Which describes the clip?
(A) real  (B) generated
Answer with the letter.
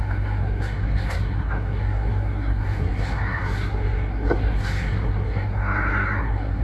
B